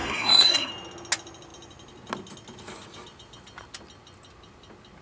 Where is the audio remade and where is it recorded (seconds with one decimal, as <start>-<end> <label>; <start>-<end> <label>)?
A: 0.0-0.7 remade; 0.7-5.0 recorded